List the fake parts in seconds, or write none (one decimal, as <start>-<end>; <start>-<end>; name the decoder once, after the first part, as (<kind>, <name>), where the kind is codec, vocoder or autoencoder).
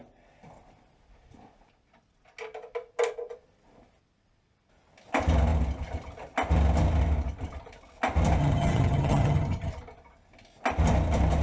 8.4-9.7 (vocoder, HiFi-GAN)